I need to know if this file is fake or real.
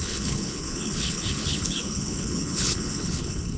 fake